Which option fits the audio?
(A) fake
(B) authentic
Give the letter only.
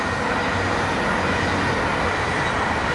B